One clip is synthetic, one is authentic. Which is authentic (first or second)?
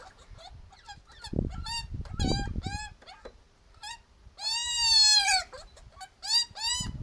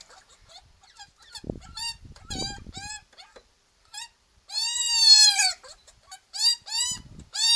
first